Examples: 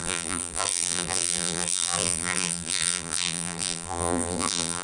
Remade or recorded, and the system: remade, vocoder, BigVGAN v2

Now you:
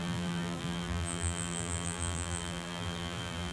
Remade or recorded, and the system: remade, vocoder, BigVGAN v2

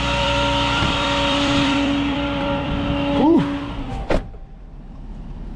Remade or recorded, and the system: remade, vocoder, BigVGAN v2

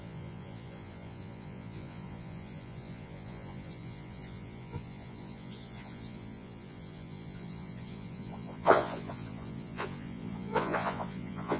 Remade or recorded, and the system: remade, vocoder, Vocos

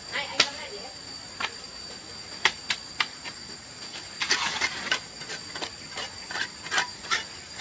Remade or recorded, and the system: recorded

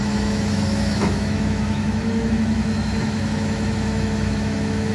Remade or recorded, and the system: remade, autoencoder, DAC-VAE